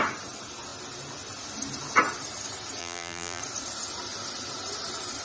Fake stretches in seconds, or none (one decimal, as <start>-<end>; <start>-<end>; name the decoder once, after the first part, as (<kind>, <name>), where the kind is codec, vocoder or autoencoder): 2.8-3.4 (vocoder, BigVGAN v2)